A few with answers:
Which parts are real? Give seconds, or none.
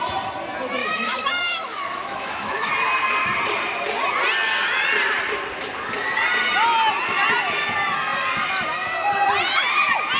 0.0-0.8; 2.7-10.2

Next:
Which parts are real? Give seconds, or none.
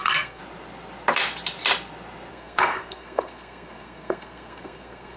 0.4-2.3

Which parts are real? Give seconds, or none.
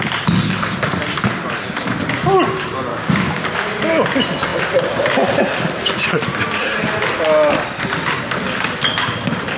0.0-2.9; 3.5-9.6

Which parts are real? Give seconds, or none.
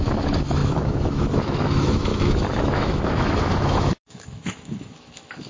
none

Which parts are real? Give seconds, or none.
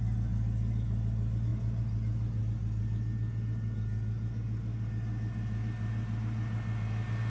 0.0-7.3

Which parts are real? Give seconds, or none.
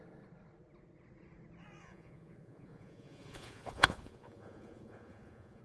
0.0-1.8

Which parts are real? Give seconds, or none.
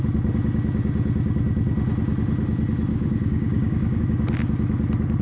0.0-2.9; 4.0-5.2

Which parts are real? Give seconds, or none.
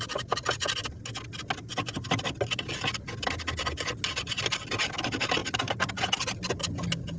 0.0-7.2